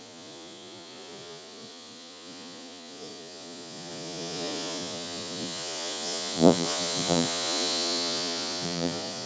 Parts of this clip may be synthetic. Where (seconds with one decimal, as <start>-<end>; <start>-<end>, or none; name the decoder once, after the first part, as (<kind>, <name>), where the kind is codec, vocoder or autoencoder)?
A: 0.0-9.3 (vocoder, Vocos)

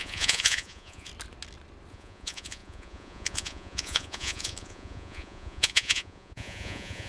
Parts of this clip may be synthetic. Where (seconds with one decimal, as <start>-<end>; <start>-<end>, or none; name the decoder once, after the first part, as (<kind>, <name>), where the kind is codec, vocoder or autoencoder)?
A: 0.0-1.1 (vocoder, Vocos); 1.9-7.1

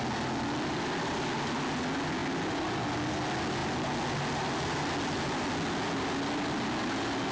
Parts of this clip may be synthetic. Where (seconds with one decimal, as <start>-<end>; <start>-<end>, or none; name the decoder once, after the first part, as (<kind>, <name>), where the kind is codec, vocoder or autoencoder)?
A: none

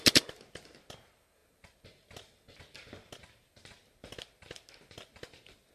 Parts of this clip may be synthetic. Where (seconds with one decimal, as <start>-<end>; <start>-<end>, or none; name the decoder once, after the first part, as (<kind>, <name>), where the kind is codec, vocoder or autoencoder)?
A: none

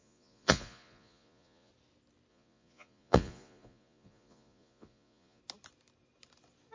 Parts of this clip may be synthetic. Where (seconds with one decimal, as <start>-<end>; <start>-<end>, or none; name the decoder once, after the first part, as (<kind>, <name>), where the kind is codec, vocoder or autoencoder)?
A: 0.0-1.7 (vocoder, Vocos); 2.3-5.4

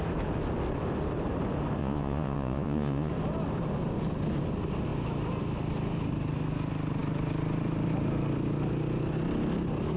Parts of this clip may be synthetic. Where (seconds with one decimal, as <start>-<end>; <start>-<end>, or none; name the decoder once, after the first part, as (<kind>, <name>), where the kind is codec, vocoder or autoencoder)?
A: 1.8-3.1 (vocoder, Vocos)

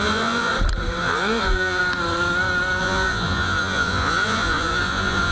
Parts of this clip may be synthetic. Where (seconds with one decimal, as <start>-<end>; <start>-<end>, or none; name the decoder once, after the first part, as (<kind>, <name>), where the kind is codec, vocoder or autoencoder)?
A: 0.0-0.5 (vocoder, Vocos); 1.0-1.8; 2.8-5.3